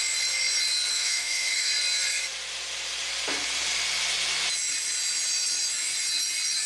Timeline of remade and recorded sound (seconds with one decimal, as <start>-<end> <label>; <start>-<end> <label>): 0.0-0.9 recorded; 0.9-1.7 remade; 1.7-6.7 recorded